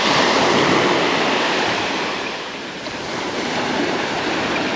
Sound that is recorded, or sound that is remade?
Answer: remade